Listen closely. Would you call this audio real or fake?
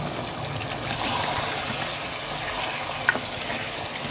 real